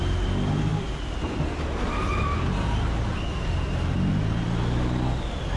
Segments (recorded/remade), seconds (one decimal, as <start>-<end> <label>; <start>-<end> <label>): 0.0-5.6 recorded